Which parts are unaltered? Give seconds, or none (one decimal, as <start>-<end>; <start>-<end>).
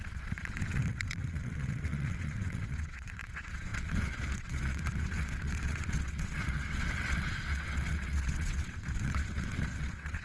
none